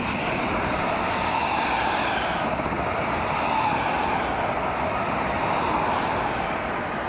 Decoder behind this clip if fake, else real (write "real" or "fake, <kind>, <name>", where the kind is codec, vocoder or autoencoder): real